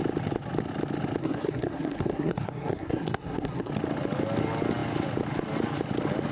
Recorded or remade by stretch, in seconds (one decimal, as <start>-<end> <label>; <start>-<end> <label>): 0.0-1.2 recorded; 1.2-3.7 remade; 3.7-6.3 recorded